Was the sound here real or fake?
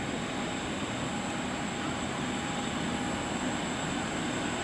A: real